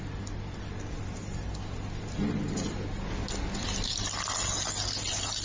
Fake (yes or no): no